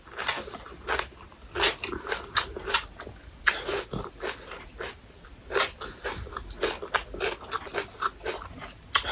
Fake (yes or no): no